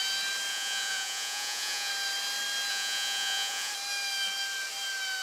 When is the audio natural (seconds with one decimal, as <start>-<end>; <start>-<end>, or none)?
0.0-0.5; 1.9-2.7; 3.7-5.2